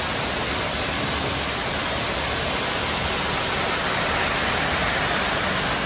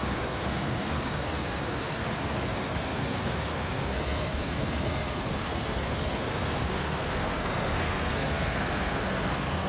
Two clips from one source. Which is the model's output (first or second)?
second